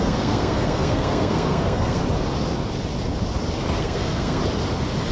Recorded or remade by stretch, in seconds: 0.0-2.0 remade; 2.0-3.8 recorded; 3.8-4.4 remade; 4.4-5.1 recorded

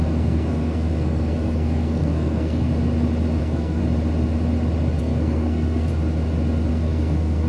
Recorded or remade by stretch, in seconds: 0.0-2.7 remade; 2.7-3.4 recorded; 3.4-3.8 remade; 3.8-5.0 recorded; 5.0-5.9 remade; 5.9-6.7 recorded; 6.7-7.5 remade

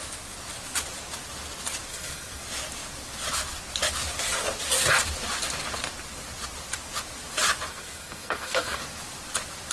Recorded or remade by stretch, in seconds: 0.0-1.9 recorded; 1.9-2.4 remade; 2.4-7.7 recorded; 7.7-8.8 remade; 8.8-9.7 recorded

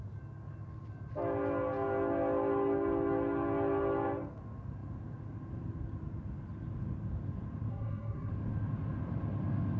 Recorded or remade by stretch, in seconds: 0.0-7.7 recorded; 7.7-8.3 remade; 8.3-9.8 recorded

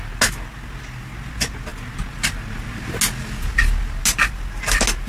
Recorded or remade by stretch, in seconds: 0.0-5.1 recorded

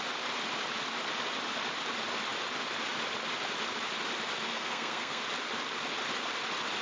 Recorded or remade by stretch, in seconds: 0.0-4.5 recorded; 4.5-5.2 remade; 5.2-6.8 recorded

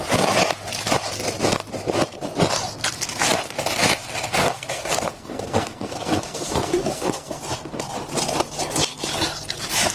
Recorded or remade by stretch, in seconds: 0.0-4.3 recorded; 4.3-7.4 remade; 7.4-9.9 recorded